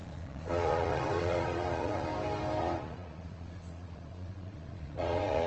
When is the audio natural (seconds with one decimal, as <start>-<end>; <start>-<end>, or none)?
2.1-2.6